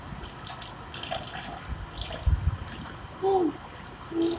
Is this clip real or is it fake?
real